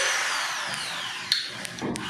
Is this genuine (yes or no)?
no